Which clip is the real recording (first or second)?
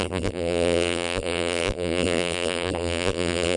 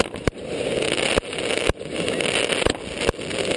second